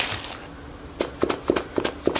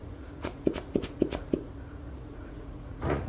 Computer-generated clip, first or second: second